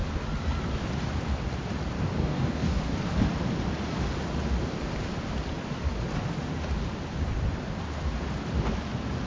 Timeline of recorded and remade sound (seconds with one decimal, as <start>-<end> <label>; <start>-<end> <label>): 0.0-2.2 recorded; 2.2-2.8 remade; 2.8-9.3 recorded